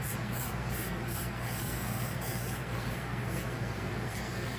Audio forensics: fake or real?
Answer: fake